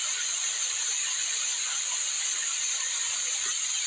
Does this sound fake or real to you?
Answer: real